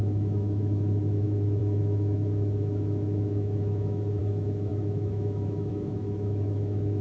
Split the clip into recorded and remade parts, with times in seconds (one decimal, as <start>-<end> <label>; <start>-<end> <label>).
0.0-7.0 remade